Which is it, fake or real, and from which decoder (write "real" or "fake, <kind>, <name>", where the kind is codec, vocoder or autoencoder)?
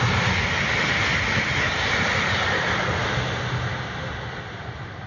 real